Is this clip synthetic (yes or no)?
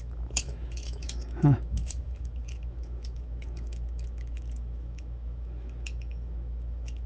yes